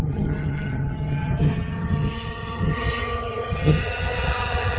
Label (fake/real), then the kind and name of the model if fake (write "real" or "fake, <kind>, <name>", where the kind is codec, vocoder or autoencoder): fake, vocoder, HiFi-GAN